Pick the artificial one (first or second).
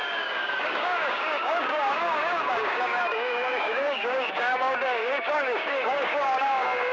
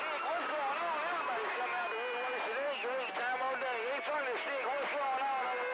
first